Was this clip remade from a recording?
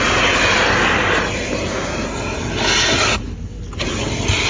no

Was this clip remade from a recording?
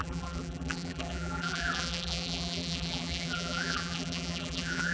yes